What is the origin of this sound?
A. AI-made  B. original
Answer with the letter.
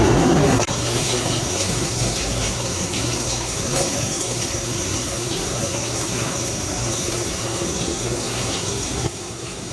A